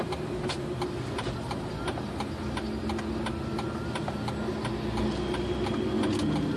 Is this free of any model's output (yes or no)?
yes